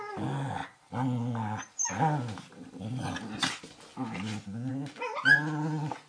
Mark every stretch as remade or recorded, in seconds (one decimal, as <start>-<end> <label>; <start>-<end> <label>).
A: 0.0-6.1 recorded